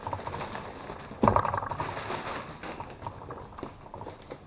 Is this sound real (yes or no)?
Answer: yes